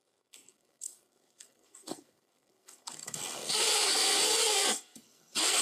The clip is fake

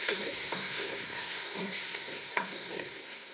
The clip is fake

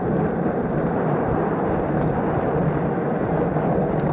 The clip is real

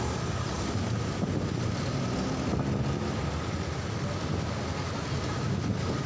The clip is real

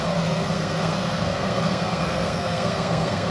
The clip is fake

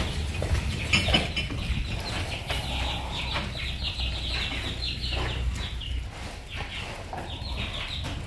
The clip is real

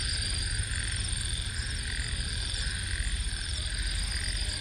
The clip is real